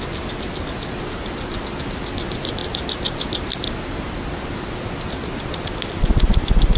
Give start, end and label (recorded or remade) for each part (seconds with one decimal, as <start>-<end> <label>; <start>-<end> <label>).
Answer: 0.0-6.8 recorded